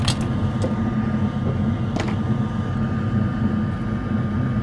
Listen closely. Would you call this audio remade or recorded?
recorded